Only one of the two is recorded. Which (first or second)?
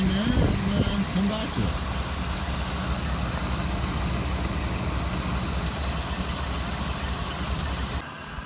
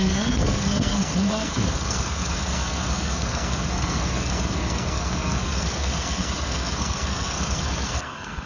first